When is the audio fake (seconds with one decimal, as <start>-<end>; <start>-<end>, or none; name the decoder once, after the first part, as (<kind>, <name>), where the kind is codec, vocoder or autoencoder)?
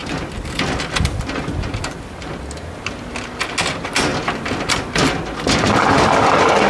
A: 0.0-1.0 (vocoder, BigVGAN v2); 4.1-6.1